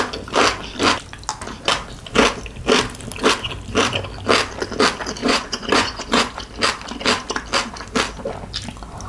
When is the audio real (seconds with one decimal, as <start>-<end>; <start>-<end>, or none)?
0.0-5.2; 6.4-9.1